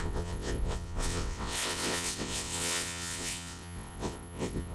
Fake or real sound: fake